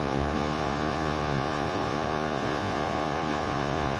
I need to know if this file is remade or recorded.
remade